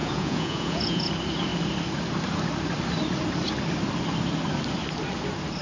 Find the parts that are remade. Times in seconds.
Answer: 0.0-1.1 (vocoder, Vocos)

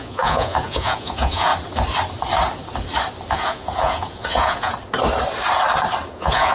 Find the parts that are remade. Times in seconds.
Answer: 0.0-1.5 (vocoder, Vocos); 3.3-4.7; 6.1-6.5

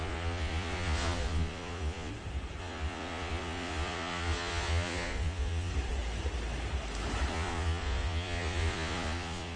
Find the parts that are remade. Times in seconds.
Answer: 0.0-2.1 (vocoder, Vocos); 2.6-5.7; 7.3-9.6

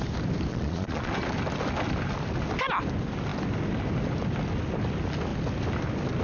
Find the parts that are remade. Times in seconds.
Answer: 0.5-1.1 (vocoder, Vocos)

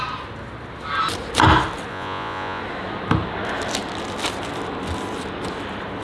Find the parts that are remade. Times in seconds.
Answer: 1.9-2.6 (vocoder, Vocos)

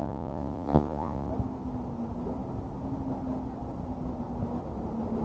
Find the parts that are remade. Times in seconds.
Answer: 0.0-1.3 (vocoder, Vocos)